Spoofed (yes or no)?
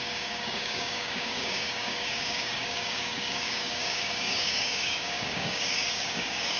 yes